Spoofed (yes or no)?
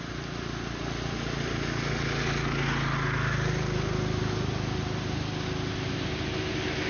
no